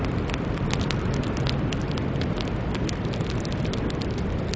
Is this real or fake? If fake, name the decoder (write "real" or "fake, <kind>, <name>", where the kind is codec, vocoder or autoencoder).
real